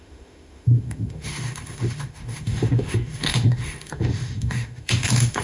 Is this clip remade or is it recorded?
remade